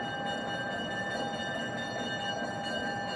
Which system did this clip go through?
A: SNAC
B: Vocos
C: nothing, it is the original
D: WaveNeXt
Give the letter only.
C